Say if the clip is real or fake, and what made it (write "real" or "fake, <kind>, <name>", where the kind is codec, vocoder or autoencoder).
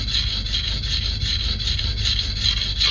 real